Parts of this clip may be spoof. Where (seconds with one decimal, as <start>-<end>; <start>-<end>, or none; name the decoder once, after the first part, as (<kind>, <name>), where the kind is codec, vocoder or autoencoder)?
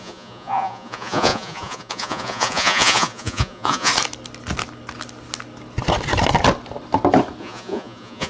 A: 0.0-3.9 (vocoder, Vocos); 7.4-8.3